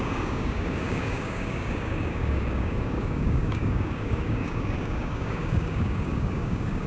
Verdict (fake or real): fake